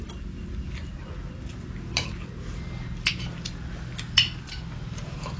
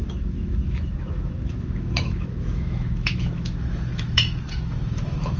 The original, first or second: first